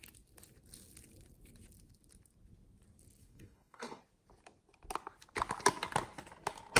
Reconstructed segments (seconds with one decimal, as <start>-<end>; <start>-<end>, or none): 3.2-4.0